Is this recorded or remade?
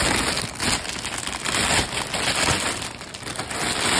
recorded